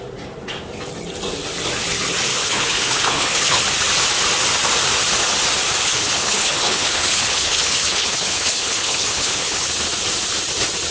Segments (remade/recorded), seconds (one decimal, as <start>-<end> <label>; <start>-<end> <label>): 0.0-2.3 recorded; 2.3-3.6 remade; 3.6-5.8 recorded; 5.8-9.7 remade; 9.7-10.9 recorded